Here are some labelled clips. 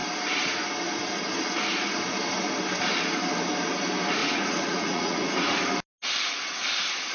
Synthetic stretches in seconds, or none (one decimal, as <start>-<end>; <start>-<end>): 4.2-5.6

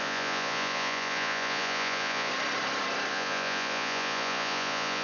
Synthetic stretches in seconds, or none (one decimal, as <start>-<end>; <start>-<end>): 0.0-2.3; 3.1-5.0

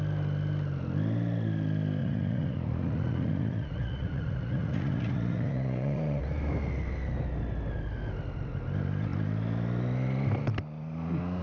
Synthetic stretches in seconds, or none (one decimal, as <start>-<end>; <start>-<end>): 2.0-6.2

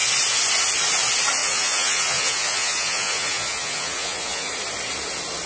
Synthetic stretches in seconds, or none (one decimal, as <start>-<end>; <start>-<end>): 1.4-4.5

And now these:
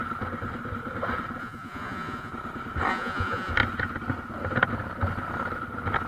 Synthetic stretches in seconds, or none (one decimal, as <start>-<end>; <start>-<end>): 1.4-2.3; 2.9-3.5

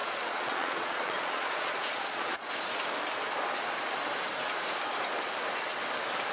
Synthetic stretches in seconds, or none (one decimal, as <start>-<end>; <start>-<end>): 0.0-2.5

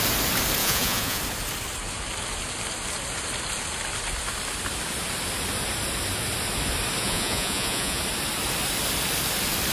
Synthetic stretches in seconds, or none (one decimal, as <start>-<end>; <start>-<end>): 0.6-1.2; 7.0-8.0